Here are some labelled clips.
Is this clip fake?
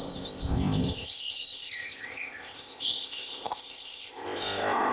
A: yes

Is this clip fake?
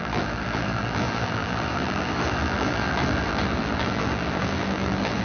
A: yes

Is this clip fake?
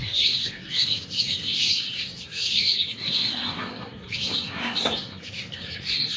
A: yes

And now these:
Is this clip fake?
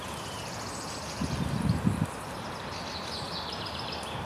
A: no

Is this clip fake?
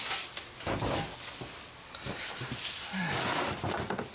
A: no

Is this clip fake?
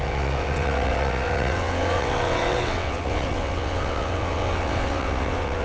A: yes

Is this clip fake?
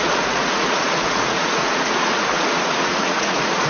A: yes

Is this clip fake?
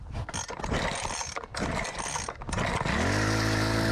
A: no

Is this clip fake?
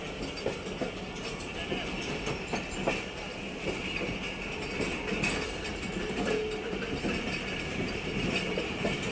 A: no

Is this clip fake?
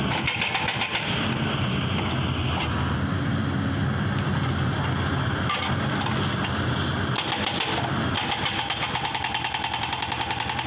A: no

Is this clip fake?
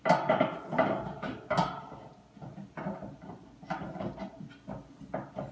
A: no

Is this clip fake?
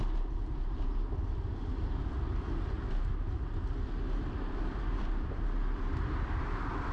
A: no